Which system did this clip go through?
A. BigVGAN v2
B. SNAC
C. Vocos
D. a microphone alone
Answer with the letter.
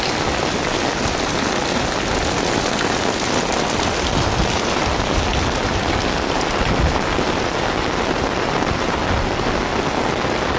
D